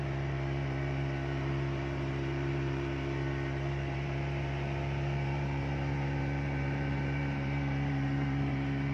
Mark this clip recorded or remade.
remade